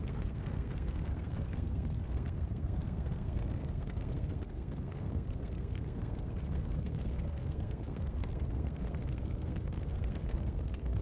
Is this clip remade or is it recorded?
remade